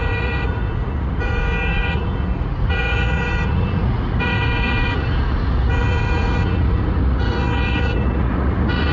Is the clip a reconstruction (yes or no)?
yes